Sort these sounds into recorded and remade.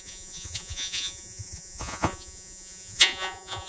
remade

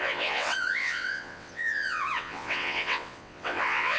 remade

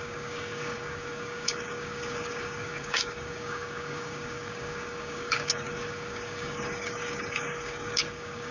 remade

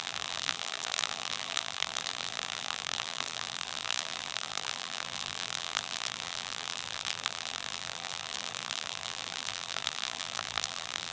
remade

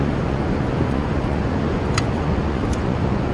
remade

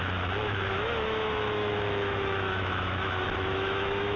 remade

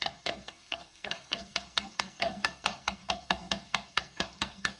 remade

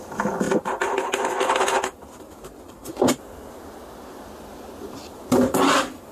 recorded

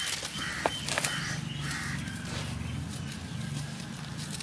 recorded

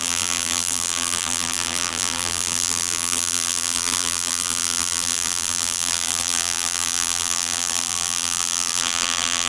remade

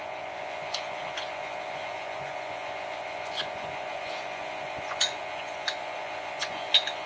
remade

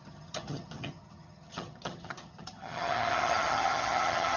remade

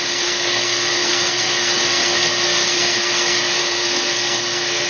remade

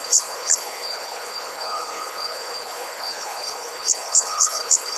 remade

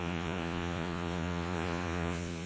remade